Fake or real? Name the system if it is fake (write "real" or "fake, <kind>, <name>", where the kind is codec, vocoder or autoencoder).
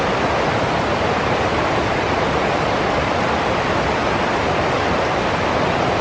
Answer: real